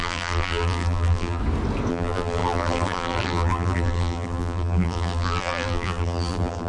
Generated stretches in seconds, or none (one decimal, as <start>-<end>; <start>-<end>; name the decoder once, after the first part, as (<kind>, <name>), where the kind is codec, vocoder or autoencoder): 0.0-1.4 (vocoder, BigVGAN v2); 1.9-6.7